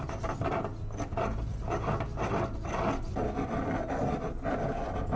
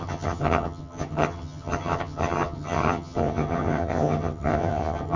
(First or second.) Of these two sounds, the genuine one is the first